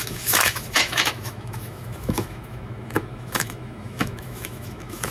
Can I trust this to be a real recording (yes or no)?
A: no